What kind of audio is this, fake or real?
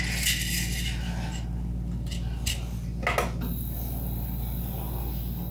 real